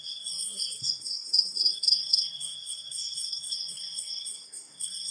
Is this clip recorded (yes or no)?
no